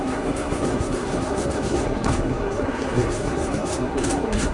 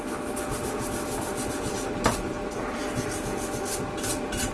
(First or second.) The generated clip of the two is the first